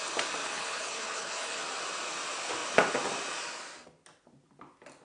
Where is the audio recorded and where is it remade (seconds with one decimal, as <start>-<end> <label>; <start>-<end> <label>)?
0.0-0.4 recorded; 0.4-1.6 remade; 1.6-5.0 recorded